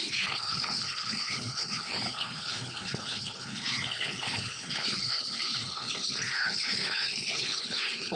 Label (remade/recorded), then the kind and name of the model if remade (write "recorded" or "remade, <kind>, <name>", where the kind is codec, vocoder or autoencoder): remade, codec, HILCodec